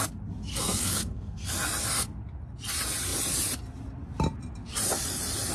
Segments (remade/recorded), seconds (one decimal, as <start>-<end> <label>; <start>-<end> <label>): 0.0-0.5 recorded; 0.5-1.5 remade; 1.5-5.5 recorded